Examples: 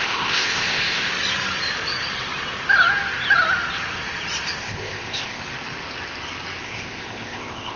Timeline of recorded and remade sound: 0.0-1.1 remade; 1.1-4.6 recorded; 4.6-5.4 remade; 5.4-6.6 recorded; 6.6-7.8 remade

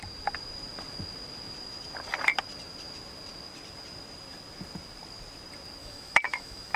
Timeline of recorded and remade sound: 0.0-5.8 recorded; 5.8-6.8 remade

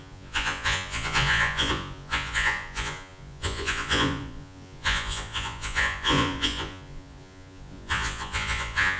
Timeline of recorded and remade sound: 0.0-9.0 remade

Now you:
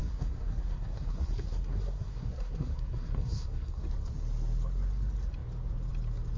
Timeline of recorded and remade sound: 0.0-3.8 remade; 3.8-6.4 recorded